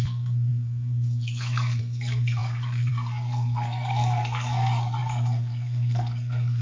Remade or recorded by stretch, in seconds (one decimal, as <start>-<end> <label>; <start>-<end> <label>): 0.0-6.6 remade